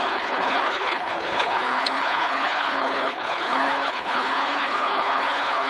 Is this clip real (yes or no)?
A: no